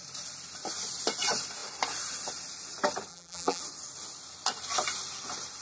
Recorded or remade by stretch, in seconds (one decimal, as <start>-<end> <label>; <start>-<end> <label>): 0.0-3.1 recorded; 3.1-3.6 remade; 3.6-5.6 recorded